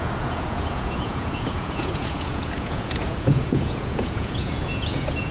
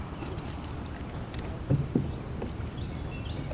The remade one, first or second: first